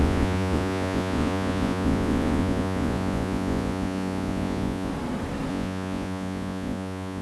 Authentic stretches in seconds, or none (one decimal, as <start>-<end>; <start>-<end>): 4.9-5.5